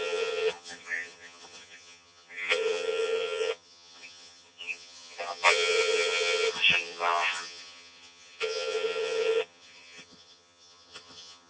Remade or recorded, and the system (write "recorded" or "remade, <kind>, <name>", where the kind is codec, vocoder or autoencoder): remade, vocoder, HiFi-GAN